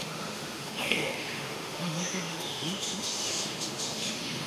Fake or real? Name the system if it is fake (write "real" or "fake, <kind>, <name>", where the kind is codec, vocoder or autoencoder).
fake, autoencoder, DAC-VAE